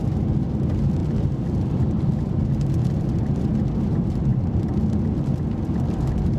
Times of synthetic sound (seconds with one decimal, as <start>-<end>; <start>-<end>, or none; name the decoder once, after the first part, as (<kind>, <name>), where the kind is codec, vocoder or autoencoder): 1.0-2.4 (vocoder, BigVGAN v2); 2.8-3.5; 4.3-5.2